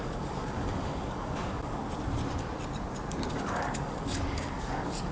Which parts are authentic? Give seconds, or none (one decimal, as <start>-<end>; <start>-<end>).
1.8-3.3